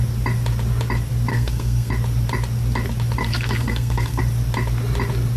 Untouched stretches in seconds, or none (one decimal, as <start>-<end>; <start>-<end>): 0.0-1.3; 1.9-3.2; 4.2-5.4